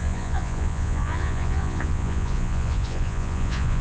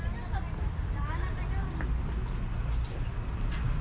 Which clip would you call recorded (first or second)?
second